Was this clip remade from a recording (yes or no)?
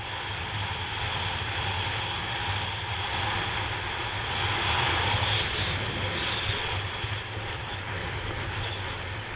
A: no